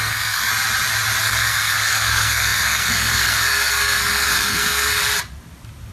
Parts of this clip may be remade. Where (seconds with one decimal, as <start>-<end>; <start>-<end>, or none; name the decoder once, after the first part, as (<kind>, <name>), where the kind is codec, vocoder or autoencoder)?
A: 0.0-0.5 (codec, SNAC); 1.2-5.0